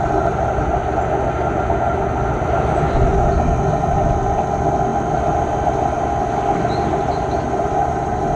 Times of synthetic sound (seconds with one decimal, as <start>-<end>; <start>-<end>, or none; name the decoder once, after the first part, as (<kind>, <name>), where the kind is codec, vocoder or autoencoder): 6.9-8.4 (vocoder, BigVGAN v2)